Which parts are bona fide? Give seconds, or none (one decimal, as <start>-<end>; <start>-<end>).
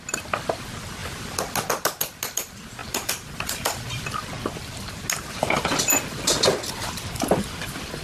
0.0-8.0